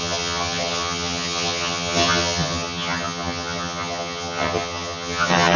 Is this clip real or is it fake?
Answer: fake